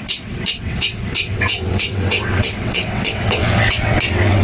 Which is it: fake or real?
fake